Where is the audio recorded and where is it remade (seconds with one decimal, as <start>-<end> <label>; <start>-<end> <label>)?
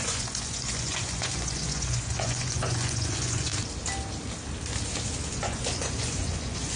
0.0-3.5 remade; 3.5-5.3 recorded; 5.3-6.8 remade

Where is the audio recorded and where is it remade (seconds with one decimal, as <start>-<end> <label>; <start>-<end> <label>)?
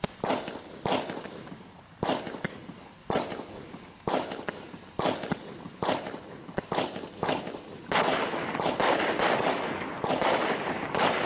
0.0-11.3 recorded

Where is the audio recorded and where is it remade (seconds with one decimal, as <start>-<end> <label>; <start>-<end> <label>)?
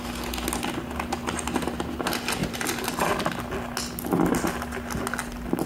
0.0-2.4 recorded; 2.4-2.9 remade; 2.9-5.7 recorded